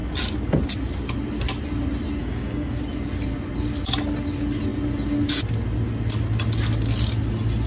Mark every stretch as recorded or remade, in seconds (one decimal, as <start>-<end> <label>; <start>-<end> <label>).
0.0-2.2 recorded; 2.2-2.8 remade; 2.8-7.7 recorded